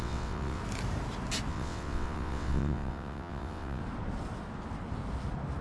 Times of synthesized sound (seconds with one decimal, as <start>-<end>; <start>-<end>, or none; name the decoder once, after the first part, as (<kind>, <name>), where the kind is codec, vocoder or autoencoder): 0.0-0.6 (vocoder, WaveNeXt); 1.5-3.8